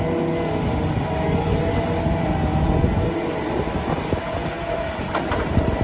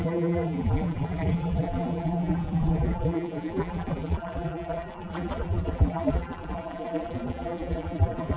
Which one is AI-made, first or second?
second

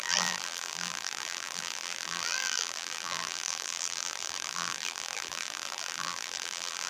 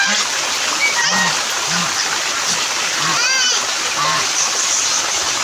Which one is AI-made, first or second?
first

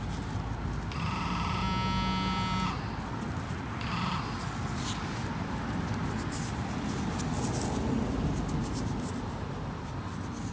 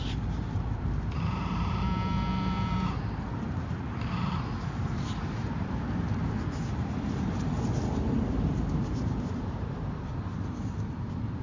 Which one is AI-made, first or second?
second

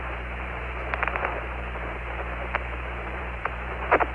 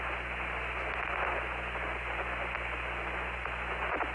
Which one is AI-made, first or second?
first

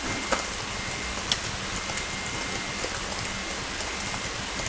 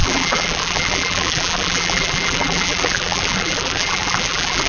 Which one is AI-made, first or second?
second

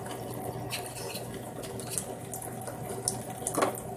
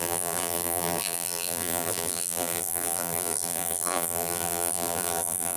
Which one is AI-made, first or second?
second